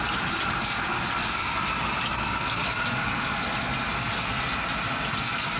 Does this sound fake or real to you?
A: real